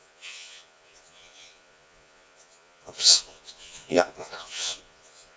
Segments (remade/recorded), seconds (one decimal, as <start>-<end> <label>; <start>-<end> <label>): 0.0-5.4 remade